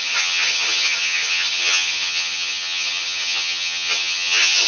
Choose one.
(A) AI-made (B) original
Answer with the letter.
A